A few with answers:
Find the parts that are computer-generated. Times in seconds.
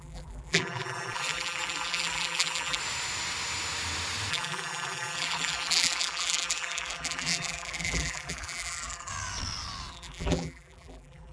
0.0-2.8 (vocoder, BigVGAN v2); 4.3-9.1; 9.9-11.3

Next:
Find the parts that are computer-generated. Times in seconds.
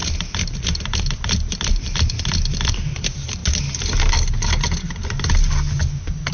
0.0-3.4 (vocoder, BigVGAN v2)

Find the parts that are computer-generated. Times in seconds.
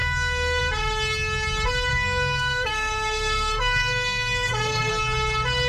0.0-0.6 (codec, SNAC); 1.9-4.9